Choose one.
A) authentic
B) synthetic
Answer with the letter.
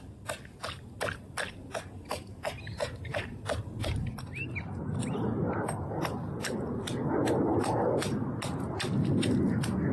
A